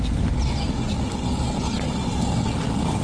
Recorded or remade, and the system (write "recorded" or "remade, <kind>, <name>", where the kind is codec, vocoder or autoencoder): recorded